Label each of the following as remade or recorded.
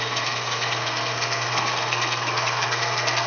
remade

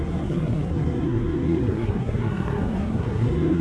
remade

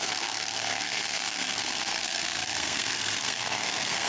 remade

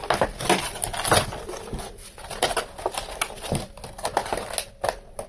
recorded